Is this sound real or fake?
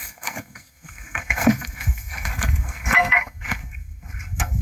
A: fake